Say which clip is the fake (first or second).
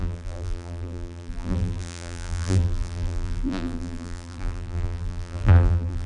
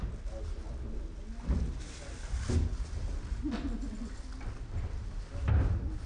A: first